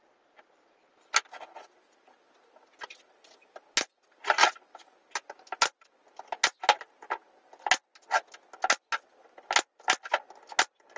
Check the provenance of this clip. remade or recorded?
recorded